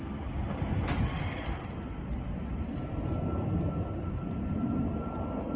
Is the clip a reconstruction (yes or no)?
no